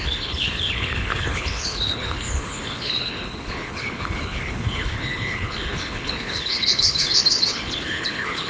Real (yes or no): no